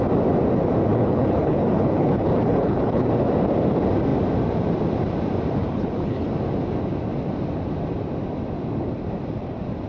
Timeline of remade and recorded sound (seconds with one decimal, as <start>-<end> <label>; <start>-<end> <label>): 0.0-0.9 recorded; 0.9-3.1 remade; 3.1-5.6 recorded; 5.6-6.3 remade; 6.3-9.9 recorded